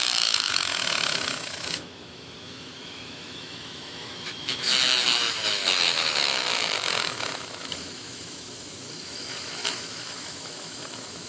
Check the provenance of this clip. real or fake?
fake